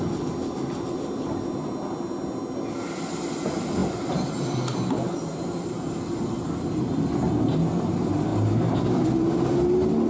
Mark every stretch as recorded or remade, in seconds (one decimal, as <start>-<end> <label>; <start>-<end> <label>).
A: 0.0-10.1 recorded